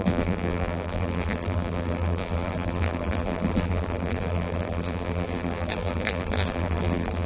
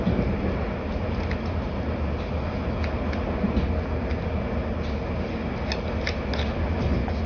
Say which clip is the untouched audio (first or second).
second